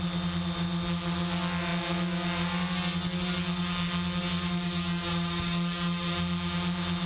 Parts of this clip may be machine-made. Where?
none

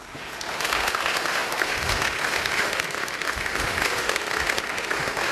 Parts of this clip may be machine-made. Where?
0.0-5.3

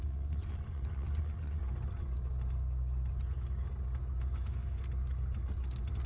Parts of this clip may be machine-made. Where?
0.0-1.6

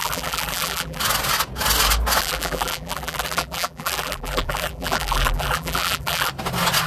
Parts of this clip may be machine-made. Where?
0.0-1.0; 2.2-6.3

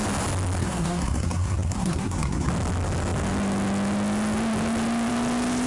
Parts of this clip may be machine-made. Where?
0.6-2.5

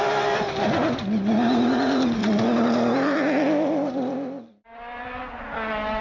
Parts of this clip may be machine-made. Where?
2.2-5.2

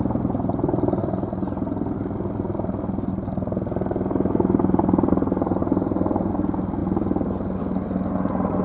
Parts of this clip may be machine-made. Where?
none